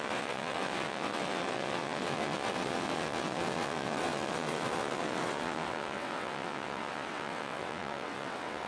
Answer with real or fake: fake